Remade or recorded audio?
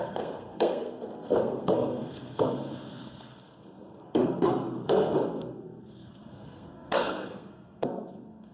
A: remade